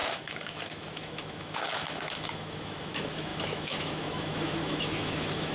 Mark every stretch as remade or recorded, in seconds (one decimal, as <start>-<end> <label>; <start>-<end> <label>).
0.0-5.5 remade